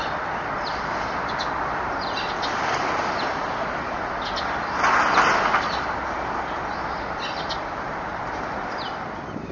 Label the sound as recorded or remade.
recorded